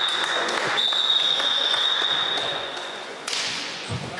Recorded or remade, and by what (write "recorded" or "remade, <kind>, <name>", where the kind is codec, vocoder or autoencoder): remade, vocoder, Vocos